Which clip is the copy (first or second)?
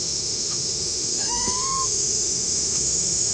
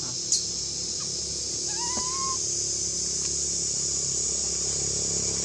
first